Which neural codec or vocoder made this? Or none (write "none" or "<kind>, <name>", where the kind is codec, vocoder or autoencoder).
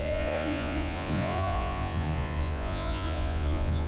vocoder, Vocos